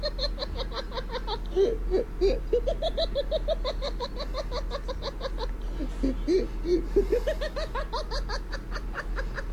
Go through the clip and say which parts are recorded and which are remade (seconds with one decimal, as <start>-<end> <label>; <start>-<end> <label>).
0.0-9.5 recorded